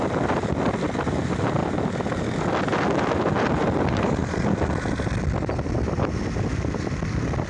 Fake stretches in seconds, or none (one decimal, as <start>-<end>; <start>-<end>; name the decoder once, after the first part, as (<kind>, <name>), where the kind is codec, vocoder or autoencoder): 0.0-1.6 (vocoder, BigVGAN v2); 3.0-7.5